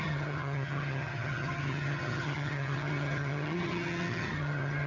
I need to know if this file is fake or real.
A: fake